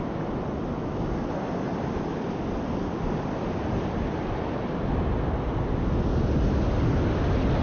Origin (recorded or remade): recorded